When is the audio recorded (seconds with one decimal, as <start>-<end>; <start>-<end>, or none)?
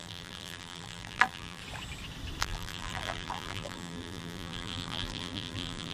1.6-2.4